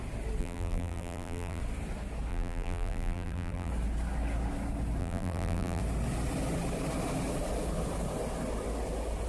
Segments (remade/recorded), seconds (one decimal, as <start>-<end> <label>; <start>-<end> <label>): 0.0-0.4 recorded; 0.4-1.6 remade; 1.6-2.3 recorded; 2.3-3.7 remade; 3.7-5.0 recorded; 5.0-5.8 remade; 5.8-9.3 recorded